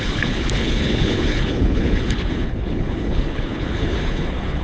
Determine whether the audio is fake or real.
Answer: fake